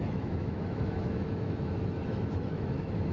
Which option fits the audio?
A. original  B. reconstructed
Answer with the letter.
B